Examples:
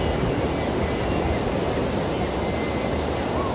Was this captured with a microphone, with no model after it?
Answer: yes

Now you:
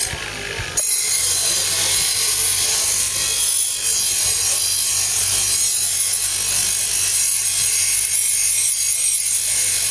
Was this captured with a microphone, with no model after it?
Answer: yes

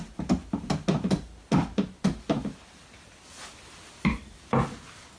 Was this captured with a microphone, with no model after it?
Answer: yes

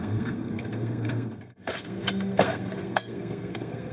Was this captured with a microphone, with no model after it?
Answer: no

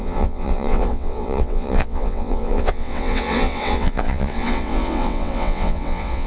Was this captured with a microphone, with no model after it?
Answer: no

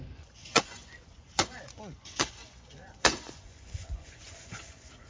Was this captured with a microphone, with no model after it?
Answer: no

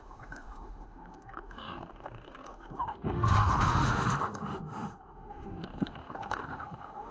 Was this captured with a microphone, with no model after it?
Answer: no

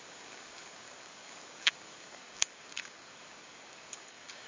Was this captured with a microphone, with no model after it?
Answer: no